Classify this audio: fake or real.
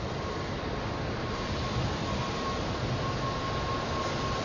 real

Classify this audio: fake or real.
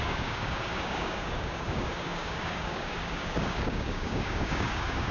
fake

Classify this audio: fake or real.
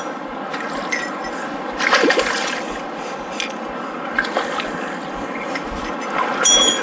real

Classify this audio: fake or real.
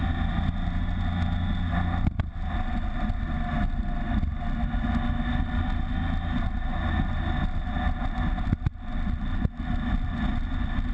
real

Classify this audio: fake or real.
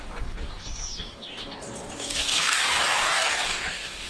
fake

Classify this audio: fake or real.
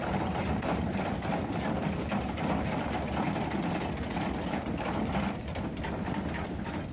real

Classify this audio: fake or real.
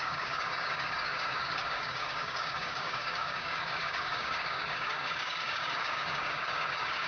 fake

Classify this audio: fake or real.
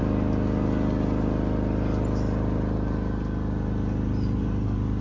real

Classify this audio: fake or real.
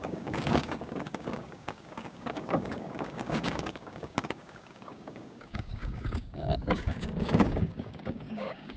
fake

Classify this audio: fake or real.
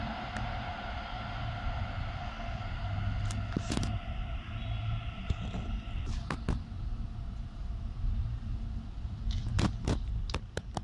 real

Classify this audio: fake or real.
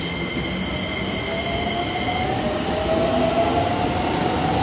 real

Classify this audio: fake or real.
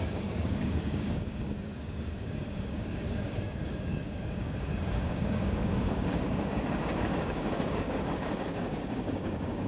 fake